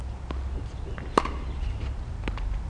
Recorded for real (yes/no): yes